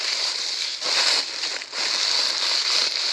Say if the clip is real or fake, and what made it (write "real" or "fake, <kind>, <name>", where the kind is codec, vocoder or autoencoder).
real